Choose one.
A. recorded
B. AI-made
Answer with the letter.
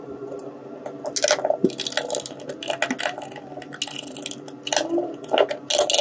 A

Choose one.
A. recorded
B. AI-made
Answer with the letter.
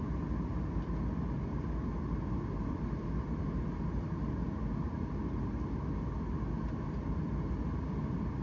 A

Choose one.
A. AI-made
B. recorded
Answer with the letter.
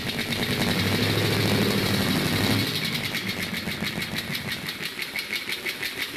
B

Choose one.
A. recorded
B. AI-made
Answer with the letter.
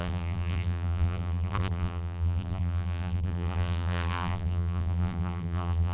B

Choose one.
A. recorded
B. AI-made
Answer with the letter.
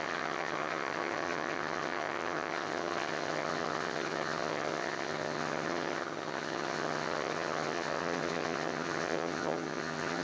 B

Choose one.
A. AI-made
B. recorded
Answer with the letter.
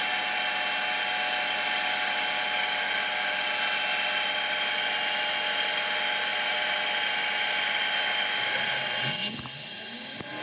B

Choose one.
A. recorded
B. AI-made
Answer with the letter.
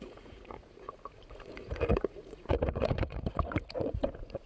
B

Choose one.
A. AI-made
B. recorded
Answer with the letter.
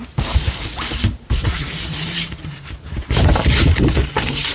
A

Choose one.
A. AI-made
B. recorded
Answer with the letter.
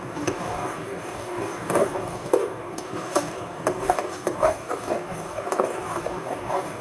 A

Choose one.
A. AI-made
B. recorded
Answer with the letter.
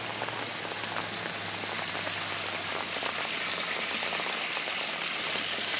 B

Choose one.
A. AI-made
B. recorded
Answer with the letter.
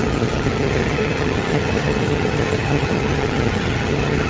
A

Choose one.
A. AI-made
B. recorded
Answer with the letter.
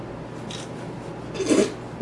B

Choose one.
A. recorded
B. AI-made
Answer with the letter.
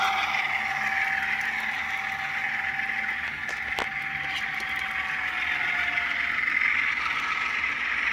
A